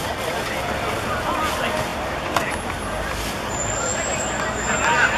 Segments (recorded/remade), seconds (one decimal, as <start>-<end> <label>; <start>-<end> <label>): 0.0-5.2 recorded